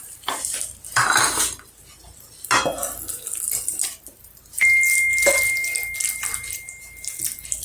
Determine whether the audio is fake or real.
real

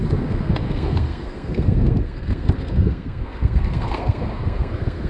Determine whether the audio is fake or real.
fake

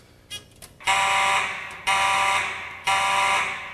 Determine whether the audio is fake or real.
real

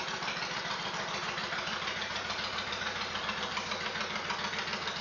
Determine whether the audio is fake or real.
real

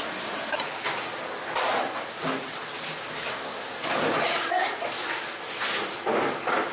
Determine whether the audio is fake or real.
real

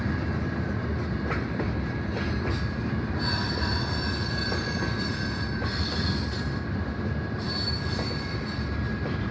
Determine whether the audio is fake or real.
real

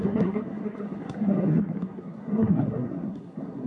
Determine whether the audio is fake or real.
fake